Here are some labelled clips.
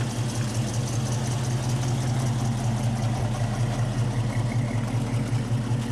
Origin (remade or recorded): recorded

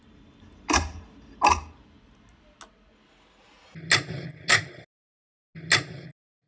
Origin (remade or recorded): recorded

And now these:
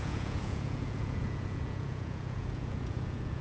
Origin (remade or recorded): remade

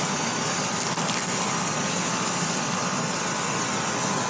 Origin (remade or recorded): recorded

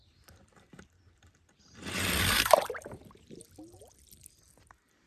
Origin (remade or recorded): remade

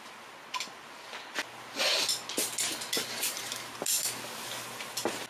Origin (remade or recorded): recorded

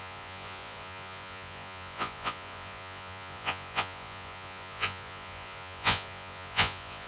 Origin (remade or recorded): remade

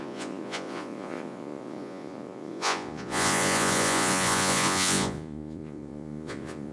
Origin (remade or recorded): remade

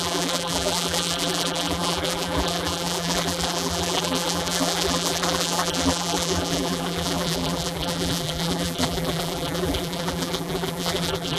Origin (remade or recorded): remade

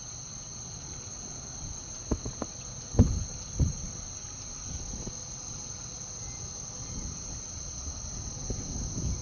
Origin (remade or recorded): recorded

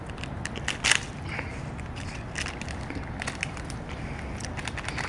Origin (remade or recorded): recorded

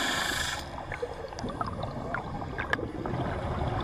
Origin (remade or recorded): recorded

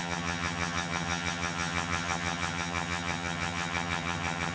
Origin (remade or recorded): remade